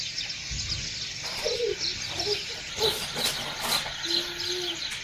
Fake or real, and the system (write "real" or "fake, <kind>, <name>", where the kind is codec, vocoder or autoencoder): real